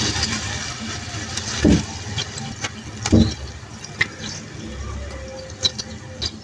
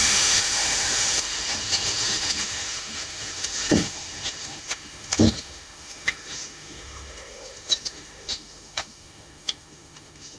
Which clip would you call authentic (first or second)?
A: first